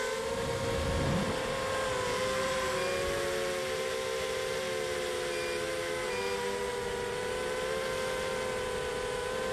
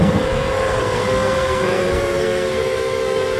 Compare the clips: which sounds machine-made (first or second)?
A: second